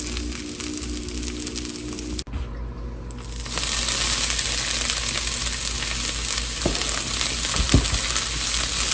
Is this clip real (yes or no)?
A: yes